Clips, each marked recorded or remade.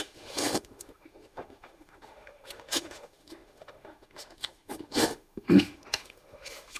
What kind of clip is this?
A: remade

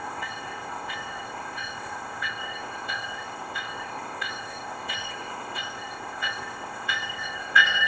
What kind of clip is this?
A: remade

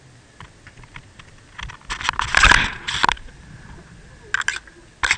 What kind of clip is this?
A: recorded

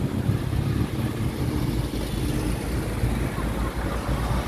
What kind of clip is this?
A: recorded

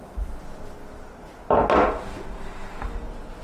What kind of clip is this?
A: recorded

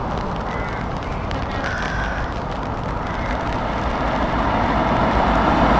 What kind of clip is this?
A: remade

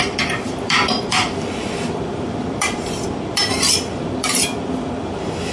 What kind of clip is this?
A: remade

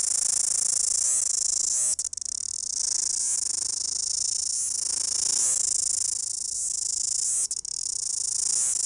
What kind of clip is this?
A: recorded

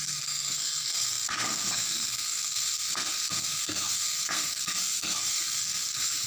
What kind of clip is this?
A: remade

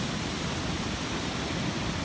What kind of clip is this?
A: recorded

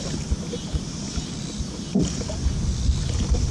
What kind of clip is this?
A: recorded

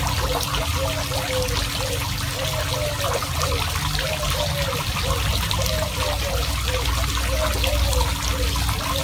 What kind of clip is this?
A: recorded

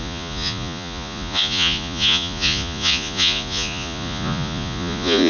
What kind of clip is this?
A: remade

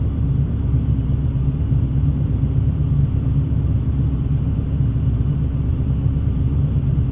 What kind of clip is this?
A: remade